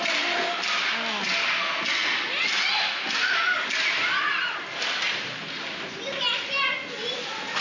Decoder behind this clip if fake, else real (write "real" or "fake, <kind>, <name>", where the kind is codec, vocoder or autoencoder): real